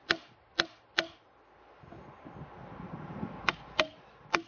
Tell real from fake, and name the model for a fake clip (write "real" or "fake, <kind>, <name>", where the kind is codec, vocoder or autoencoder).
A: real